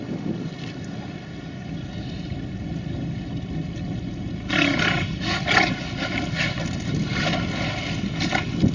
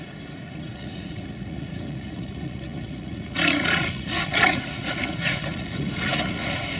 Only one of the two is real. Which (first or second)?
first